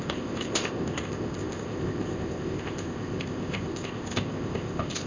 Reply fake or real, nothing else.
fake